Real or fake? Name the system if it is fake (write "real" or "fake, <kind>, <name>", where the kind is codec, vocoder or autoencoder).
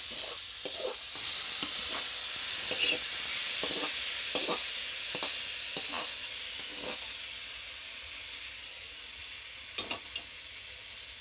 real